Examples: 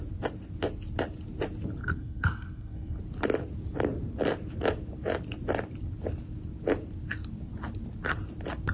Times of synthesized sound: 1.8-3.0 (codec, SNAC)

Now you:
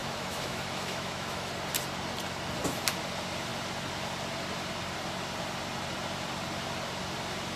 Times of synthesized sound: 0.0-1.5 (autoencoder, DAC-VAE)

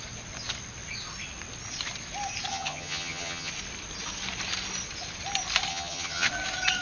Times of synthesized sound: 2.5-3.5 (vocoder, HiFi-GAN); 5.7-6.3

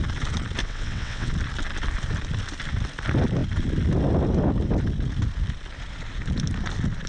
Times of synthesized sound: 0.6-1.3 (vocoder, WaveNeXt)

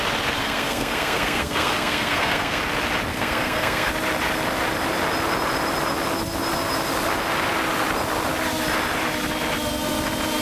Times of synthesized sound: 0.4-2.6 (codec, SNAC); 3.1-3.9

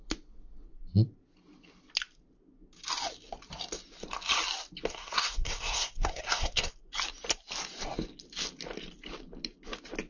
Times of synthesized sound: 4.9-6.7 (codec, SNAC)

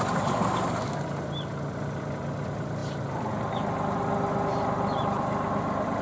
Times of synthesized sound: none